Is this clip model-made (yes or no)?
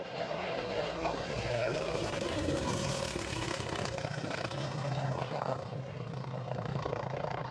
yes